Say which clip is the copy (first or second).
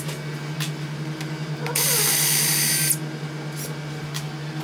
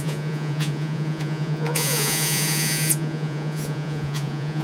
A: second